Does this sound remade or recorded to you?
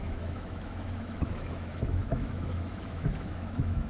remade